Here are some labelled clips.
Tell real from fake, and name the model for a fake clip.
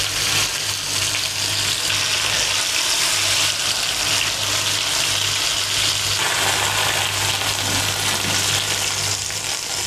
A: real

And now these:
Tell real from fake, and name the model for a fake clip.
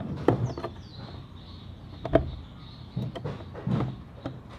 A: real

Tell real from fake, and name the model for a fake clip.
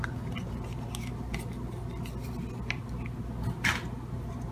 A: real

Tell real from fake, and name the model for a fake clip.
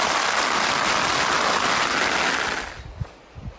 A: real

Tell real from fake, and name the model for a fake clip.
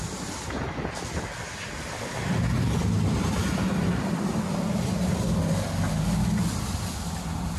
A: real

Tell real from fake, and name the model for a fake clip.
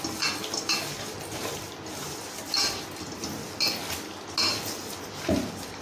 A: real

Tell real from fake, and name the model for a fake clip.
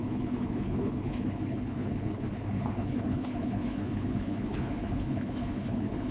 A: fake, codec, HILCodec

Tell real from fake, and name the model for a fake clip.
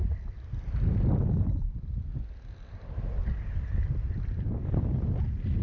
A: real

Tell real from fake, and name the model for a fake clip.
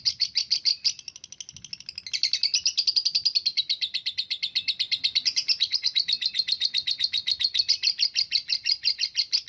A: real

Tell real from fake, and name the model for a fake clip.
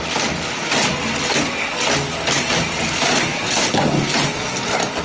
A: real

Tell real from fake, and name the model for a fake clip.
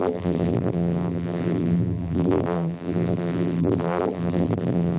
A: fake, vocoder, BigVGAN v2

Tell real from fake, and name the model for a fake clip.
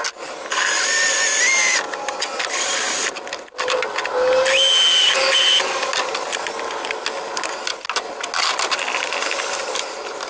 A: real